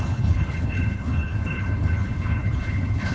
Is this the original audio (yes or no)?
no